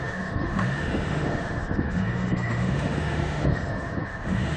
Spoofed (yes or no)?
yes